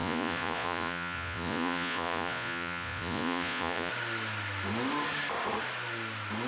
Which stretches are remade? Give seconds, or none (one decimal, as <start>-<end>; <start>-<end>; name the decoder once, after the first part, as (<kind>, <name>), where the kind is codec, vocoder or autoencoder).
0.0-3.9 (vocoder, Vocos)